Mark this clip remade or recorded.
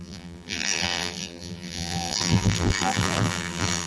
remade